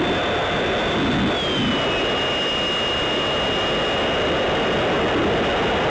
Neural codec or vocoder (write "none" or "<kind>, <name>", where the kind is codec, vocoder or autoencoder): none